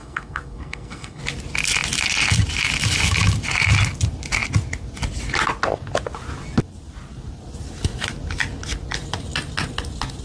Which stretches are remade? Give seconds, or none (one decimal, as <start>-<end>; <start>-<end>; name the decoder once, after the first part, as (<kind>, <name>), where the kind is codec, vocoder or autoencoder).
0.0-1.2 (codec, SNAC)